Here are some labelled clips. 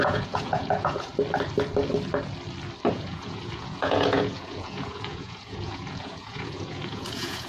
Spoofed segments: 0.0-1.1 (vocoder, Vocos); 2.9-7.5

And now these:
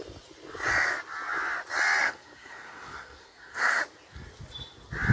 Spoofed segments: 2.0-3.8 (codec, SNAC)

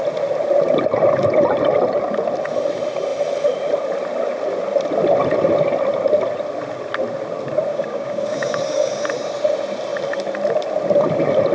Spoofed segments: 7.7-9.0 (codec, DAC)